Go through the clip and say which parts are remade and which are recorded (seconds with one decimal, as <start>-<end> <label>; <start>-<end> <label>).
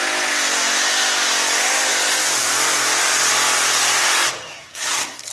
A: 0.0-4.5 recorded; 4.5-5.3 remade